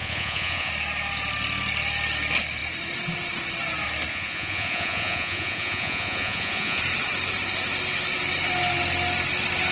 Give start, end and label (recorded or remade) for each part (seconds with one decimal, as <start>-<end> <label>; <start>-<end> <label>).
0.0-0.7 remade; 0.7-4.1 recorded; 4.1-6.8 remade; 6.8-9.7 recorded